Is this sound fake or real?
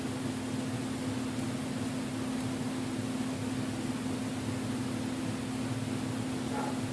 real